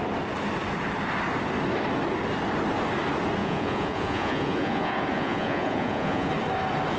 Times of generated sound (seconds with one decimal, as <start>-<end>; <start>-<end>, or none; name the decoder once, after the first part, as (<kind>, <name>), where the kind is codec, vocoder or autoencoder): 3.4-6.3 (vocoder, Vocos)